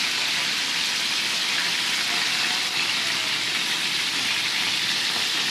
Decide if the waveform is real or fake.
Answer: real